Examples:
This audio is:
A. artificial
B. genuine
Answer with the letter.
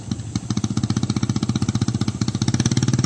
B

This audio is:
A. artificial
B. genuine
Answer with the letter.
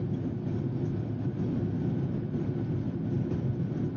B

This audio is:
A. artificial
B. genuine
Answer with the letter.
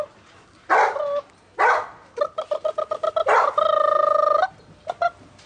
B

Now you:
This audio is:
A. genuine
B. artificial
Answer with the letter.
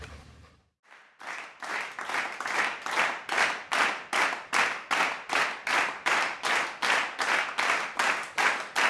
A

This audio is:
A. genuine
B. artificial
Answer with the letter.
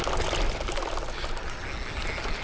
A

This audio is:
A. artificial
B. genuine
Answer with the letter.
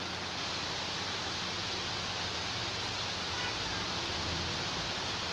B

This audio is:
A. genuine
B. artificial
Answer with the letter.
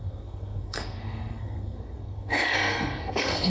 B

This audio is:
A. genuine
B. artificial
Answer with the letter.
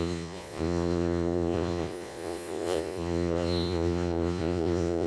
B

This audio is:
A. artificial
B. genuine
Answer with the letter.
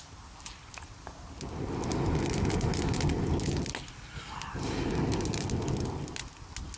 B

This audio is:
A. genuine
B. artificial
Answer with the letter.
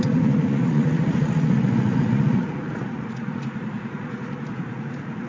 B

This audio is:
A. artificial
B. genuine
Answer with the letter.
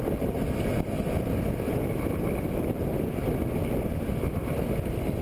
B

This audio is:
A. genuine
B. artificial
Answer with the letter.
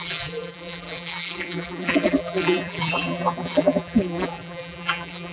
B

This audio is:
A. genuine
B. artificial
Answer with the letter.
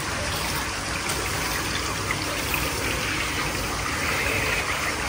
A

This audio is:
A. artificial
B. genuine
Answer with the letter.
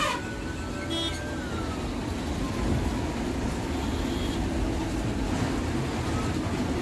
B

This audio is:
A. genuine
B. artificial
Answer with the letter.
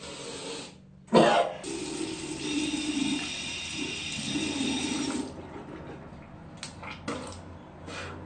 A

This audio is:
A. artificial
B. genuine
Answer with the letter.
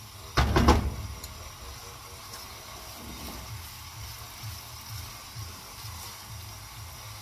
B